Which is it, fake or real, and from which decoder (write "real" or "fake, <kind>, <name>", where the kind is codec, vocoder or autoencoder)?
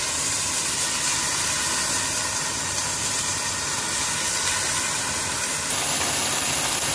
real